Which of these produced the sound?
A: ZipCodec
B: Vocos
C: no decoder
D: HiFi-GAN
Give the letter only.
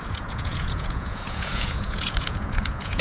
B